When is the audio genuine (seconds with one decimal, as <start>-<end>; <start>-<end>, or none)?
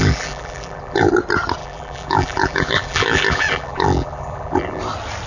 1.1-1.6; 4.8-5.3